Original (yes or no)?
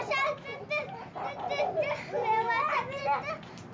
yes